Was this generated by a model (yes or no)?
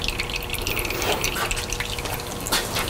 no